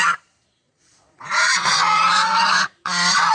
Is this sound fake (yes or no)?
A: yes